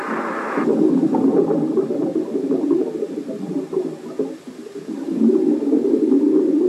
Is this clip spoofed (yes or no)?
no